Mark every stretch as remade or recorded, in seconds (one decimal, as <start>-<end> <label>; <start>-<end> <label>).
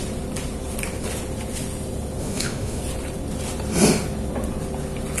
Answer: 0.0-2.2 recorded; 2.2-2.8 remade; 2.8-5.2 recorded